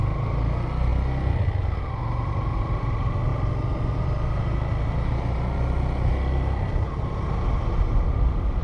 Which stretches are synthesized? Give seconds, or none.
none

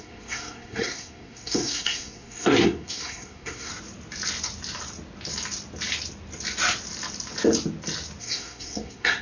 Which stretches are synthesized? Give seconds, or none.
0.0-3.7 (codec, SNAC); 8.2-9.2

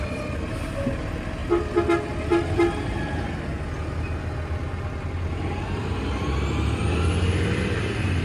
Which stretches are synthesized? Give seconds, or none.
none

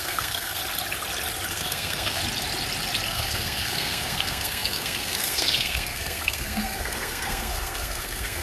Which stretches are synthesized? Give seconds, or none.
0.0-0.6 (codec, SNAC); 1.5-2.2; 3.1-8.4

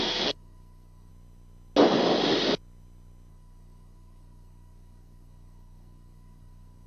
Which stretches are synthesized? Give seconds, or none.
0.0-1.1 (codec, SNAC); 3.3-6.9

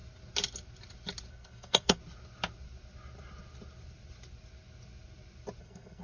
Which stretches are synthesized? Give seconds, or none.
1.3-2.0 (codec, SNAC); 5.6-6.0

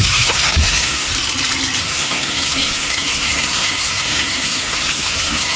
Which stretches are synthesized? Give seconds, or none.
0.0-1.1 (codec, SNAC); 1.8-5.6